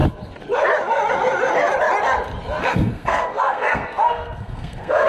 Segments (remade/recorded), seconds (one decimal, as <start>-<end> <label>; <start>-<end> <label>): 0.0-2.6 recorded; 2.6-5.1 remade